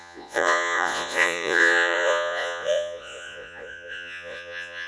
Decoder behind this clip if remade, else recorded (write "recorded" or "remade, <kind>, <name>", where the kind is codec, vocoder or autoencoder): remade, vocoder, Vocos